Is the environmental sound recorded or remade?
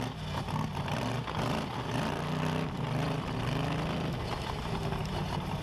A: recorded